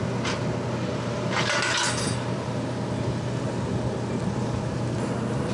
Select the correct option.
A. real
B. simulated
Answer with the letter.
A